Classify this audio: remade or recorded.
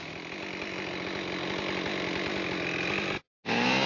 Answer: recorded